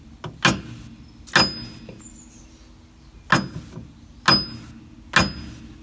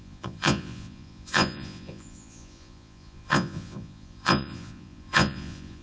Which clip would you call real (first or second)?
first